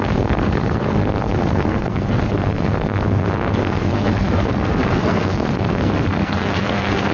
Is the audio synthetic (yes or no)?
yes